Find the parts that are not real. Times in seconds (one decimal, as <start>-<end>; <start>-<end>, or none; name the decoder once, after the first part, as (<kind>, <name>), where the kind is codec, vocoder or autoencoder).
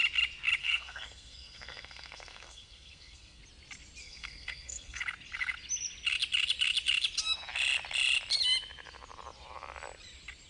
0.6-3.4 (codec, SNAC); 4.0-5.0